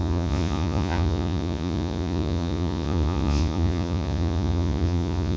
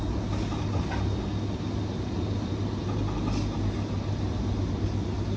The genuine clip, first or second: second